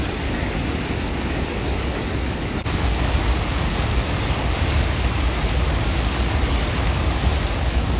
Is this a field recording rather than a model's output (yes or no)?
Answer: no